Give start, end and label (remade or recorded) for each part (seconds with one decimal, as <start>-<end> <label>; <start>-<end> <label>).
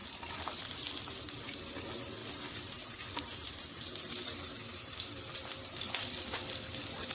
0.0-7.1 recorded